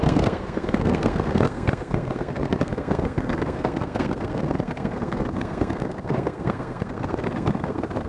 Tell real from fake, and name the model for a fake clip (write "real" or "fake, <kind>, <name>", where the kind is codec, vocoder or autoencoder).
fake, codec, SNAC